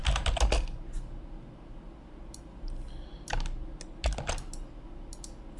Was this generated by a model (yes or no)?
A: no